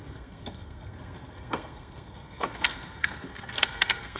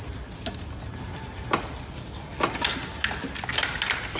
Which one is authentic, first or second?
second